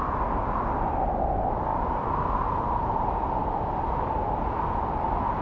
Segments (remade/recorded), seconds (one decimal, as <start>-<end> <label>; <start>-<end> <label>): 0.0-5.4 recorded